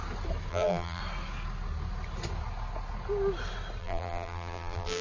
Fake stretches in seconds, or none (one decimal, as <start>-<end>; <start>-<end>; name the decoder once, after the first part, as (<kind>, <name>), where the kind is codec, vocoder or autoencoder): 0.5-1.0 (vocoder, BigVGAN v2); 3.8-5.0